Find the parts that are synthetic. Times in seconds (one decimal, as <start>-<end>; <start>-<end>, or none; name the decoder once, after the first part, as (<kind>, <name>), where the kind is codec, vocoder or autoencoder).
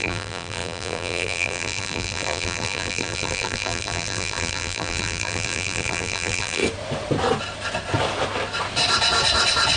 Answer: 0.0-6.6 (vocoder, BigVGAN v2)